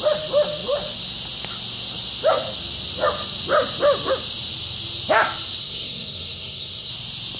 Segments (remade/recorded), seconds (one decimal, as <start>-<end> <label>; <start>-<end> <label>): 0.0-5.6 recorded; 5.6-6.9 remade; 6.9-7.4 recorded